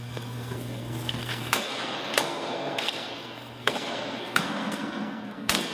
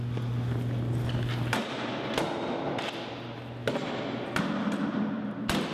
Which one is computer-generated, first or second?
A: first